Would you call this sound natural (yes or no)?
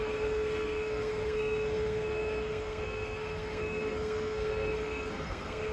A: no